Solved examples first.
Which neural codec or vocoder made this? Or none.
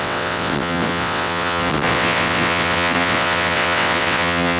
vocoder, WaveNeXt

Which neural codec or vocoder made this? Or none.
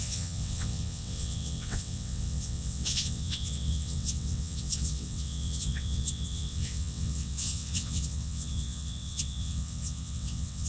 vocoder, WaveNeXt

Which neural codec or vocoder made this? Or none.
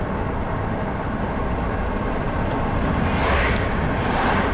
none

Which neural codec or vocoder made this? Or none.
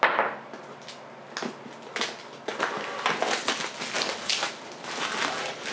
none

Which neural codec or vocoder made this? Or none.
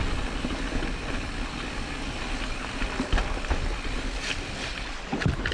none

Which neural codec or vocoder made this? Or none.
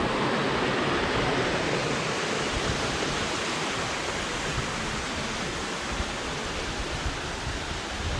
none